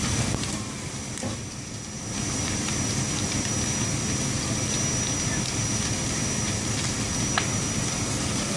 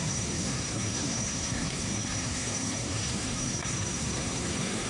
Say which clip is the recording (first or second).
first